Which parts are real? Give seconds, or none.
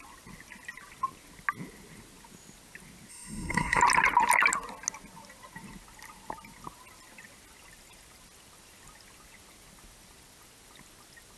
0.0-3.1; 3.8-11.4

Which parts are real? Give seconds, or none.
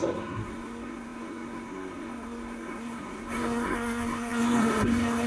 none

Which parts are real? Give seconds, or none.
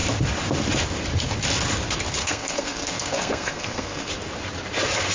0.0-2.2; 4.1-5.1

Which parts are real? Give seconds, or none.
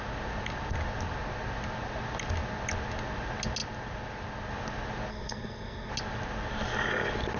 0.0-5.1; 5.9-7.4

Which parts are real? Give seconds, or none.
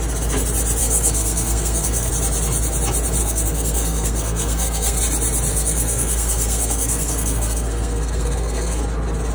0.0-0.8; 2.1-3.2; 5.0-5.5; 8.8-9.3